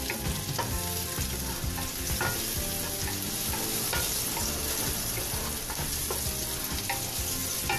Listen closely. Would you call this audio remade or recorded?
recorded